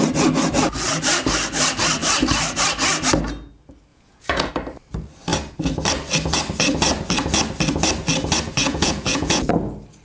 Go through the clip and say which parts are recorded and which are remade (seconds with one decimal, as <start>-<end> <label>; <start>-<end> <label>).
0.0-3.9 recorded; 3.9-4.5 remade; 4.5-8.6 recorded; 8.6-9.5 remade; 9.5-10.0 recorded